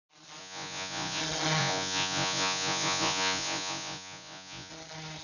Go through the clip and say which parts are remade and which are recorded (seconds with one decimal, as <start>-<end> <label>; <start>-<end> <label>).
0.0-0.4 recorded; 0.4-1.2 remade; 1.2-1.6 recorded; 1.6-4.7 remade; 4.7-5.2 recorded